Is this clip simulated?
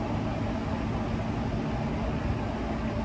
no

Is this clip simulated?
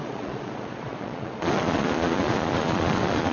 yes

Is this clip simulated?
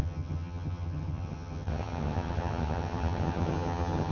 yes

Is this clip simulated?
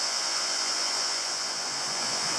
yes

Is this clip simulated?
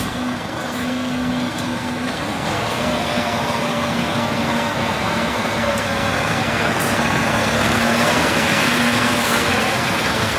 yes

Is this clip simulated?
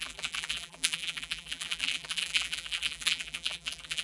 yes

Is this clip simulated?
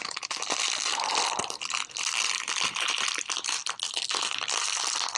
no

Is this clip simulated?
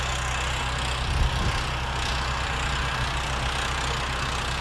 no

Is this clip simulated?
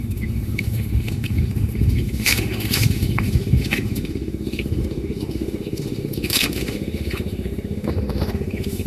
yes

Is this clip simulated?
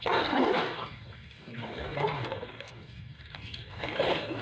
yes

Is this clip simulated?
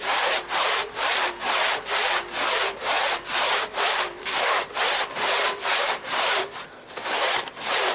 yes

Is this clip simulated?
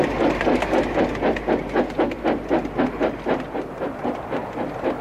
no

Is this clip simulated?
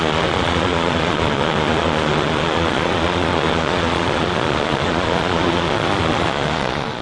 yes